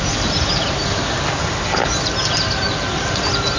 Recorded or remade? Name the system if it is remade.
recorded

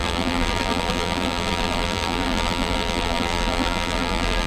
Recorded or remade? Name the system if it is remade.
remade, vocoder, BigVGAN v2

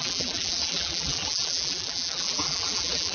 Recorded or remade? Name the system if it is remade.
remade, vocoder, BigVGAN v2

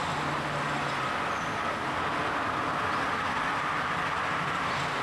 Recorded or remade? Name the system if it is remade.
recorded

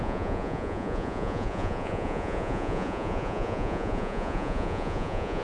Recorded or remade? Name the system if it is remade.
remade, vocoder, Vocos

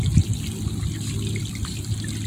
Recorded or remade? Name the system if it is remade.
recorded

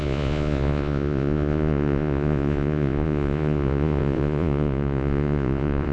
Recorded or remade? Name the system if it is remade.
remade, vocoder, Vocos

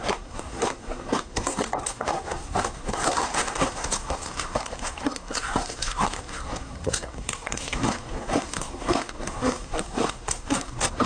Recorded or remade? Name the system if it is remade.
remade, codec, SNAC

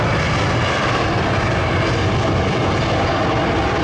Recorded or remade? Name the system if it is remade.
recorded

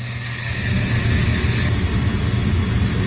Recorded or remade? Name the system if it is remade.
recorded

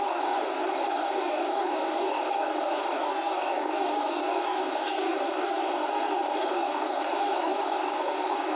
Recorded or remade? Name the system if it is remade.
remade, codec, DAC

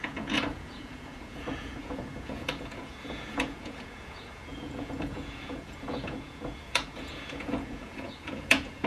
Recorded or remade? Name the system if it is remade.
remade, vocoder, Vocos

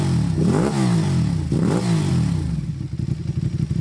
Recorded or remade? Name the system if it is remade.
recorded